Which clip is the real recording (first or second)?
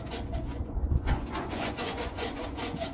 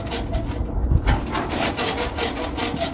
second